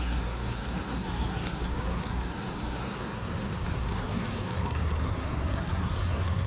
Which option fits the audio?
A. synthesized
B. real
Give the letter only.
A